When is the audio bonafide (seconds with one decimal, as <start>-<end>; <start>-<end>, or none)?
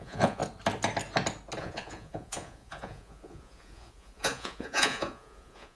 0.4-1.6